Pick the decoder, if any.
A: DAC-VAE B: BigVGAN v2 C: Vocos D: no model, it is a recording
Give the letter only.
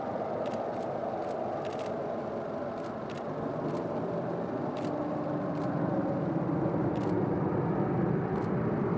D